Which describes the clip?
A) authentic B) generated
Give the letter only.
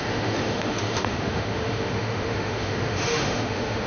B